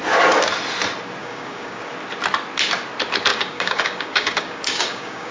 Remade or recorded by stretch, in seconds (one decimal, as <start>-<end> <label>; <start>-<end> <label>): 0.0-1.2 recorded; 1.2-1.9 remade; 1.9-3.3 recorded; 3.3-5.3 remade